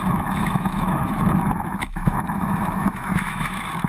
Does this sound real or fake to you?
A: fake